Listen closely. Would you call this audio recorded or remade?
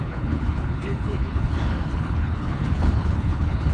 remade